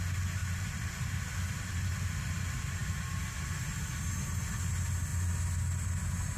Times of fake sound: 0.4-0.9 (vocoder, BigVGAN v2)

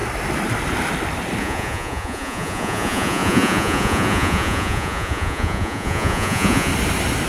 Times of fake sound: 1.4-6.7 (vocoder, Vocos)

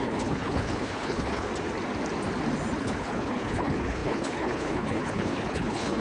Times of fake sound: 0.0-1.5 (codec, HILCodec); 2.8-6.0

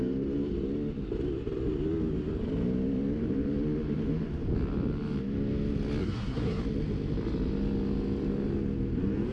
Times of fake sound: 6.0-6.6 (codec, SNAC)

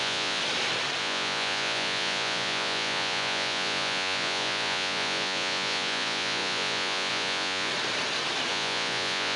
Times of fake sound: 0.0-0.4 (vocoder, Vocos); 1.0-7.7; 8.5-9.4

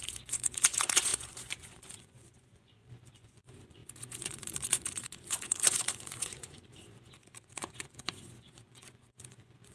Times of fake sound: 0.0-9.7 (vocoder, Vocos)

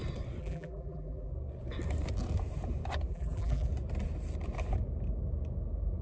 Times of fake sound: 0.4-1.3 (vocoder, BigVGAN v2); 3.1-3.7

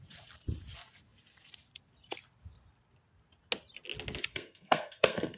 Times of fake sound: 4.3-5.4 (codec, SNAC)